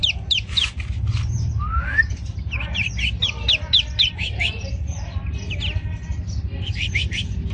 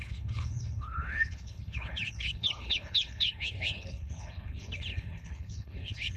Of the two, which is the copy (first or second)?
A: second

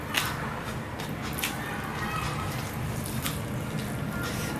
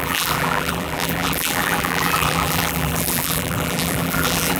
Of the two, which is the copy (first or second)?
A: second